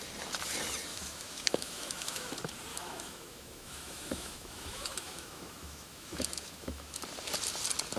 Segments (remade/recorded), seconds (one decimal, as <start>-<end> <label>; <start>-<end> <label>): 0.0-0.9 recorded; 0.9-2.3 remade; 2.3-2.7 recorded; 2.7-7.0 remade; 7.0-8.0 recorded